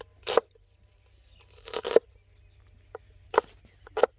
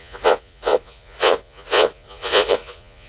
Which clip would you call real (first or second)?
first